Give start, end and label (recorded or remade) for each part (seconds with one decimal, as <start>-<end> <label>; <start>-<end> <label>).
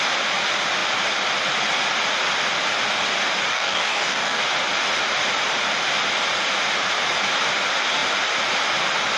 0.0-3.5 recorded; 3.5-4.4 remade; 4.4-9.2 recorded